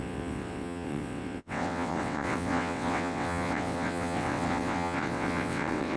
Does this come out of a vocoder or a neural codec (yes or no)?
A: yes